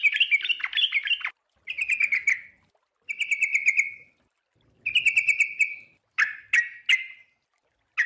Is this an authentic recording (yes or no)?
yes